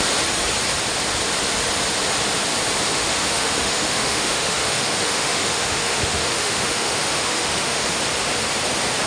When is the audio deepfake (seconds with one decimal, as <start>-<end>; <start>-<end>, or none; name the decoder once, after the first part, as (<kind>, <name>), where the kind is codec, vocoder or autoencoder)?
2.9-7.9 (autoencoder, DAC-VAE)